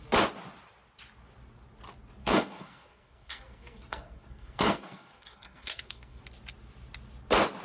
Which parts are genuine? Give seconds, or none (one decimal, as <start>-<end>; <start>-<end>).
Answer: 0.0-2.2; 6.2-7.6